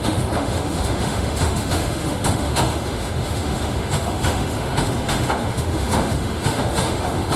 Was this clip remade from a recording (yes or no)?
yes